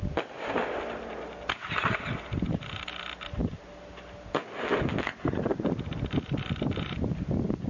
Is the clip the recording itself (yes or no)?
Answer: yes